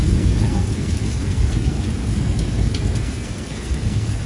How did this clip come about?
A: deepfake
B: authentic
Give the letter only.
A